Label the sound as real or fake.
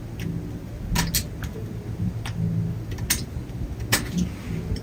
real